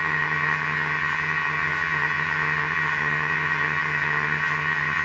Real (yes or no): no